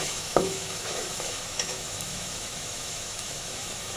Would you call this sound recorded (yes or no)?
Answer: no